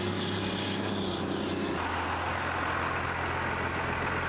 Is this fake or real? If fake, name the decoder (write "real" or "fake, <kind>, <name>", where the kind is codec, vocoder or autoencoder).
real